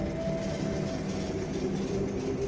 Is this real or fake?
real